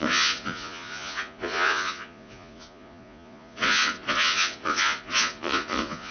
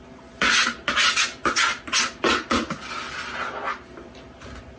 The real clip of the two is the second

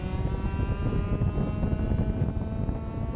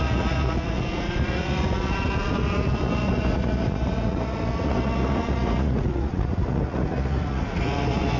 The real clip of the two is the first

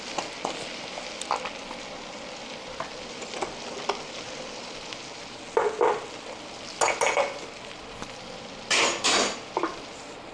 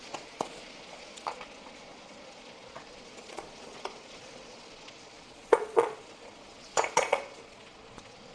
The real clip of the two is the first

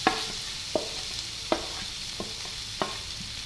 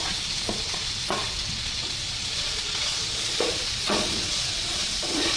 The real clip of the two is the first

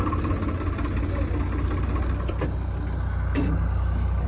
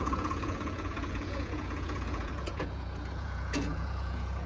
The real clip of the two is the first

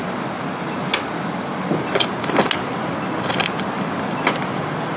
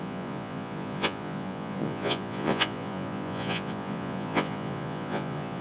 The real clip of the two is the first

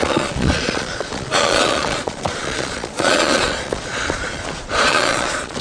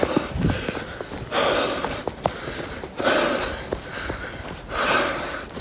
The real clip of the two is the second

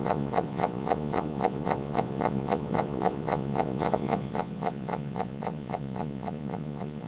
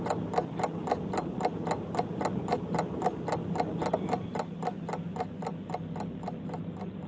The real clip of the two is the second